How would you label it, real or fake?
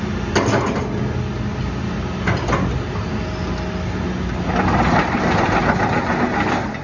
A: real